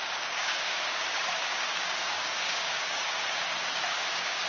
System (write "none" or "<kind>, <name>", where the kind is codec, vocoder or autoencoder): codec, DAC